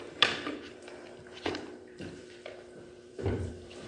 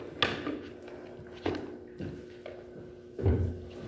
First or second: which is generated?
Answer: first